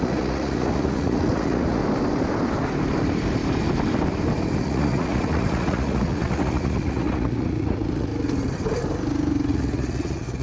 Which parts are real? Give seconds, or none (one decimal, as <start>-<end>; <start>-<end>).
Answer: 1.8-4.6; 8.1-9.5

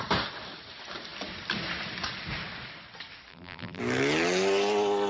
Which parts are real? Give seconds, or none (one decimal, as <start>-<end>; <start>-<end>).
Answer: 0.0-3.3; 3.8-5.1

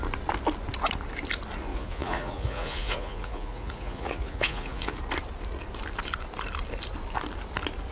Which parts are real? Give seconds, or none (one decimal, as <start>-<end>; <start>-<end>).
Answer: 0.0-1.7; 5.0-7.9

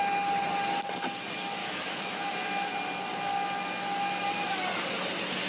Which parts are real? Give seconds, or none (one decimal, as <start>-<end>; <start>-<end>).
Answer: 0.0-1.6; 2.2-5.5

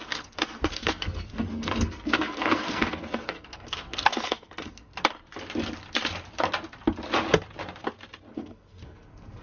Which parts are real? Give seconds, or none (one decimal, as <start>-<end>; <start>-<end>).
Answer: 4.9-8.3

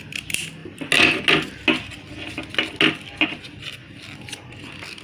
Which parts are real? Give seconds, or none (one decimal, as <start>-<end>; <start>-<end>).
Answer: 0.0-5.0

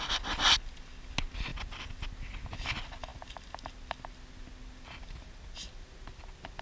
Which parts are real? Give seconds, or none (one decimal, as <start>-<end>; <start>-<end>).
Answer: 0.0-6.6

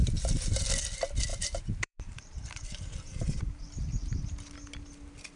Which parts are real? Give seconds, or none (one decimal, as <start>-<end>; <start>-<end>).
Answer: 0.6-1.3; 3.4-5.4